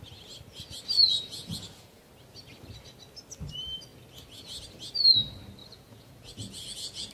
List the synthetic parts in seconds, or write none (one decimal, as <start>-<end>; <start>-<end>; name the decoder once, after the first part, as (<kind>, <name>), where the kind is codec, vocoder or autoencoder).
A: 1.1-2.0 (vocoder, Vocos); 5.6-7.1